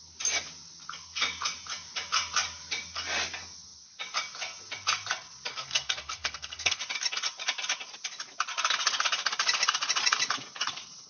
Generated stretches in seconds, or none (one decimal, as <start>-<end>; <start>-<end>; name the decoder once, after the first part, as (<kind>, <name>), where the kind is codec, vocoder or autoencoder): 5.5-6.8 (codec, SNAC)